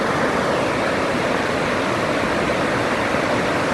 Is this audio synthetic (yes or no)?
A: yes